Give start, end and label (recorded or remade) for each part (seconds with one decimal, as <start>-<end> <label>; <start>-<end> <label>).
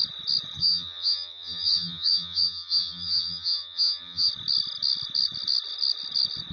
0.0-0.6 recorded; 0.6-4.3 remade; 4.3-6.5 recorded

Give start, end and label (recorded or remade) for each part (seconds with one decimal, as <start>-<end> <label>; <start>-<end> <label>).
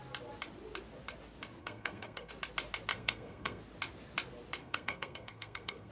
0.0-1.6 recorded; 1.6-2.3 remade; 2.3-2.9 recorded; 2.9-3.6 remade; 3.6-4.6 recorded; 4.6-5.9 remade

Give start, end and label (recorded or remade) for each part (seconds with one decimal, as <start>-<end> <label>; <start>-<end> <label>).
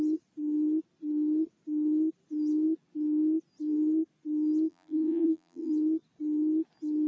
0.0-4.7 recorded; 4.7-5.7 remade; 5.7-7.1 recorded